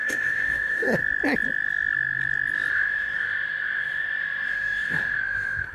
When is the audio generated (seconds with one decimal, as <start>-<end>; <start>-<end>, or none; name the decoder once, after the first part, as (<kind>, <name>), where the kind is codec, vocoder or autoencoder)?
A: 0.0-1.0 (autoencoder, DAC-VAE); 2.7-5.7